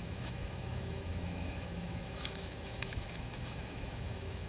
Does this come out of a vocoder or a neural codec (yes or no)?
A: yes